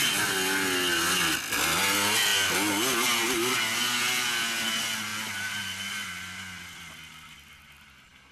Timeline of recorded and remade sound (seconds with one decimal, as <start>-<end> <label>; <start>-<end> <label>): 0.0-8.3 recorded